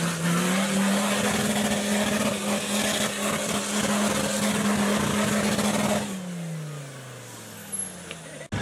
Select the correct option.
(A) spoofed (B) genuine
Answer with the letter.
B